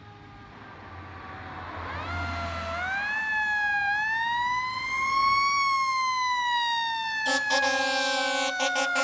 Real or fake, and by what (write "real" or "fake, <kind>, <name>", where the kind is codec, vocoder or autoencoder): real